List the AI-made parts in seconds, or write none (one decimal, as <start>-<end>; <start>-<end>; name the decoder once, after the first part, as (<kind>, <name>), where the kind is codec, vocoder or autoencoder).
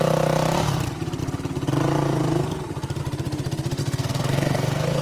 3.8-5.0 (codec, SNAC)